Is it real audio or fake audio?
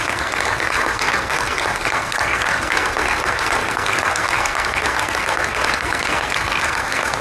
fake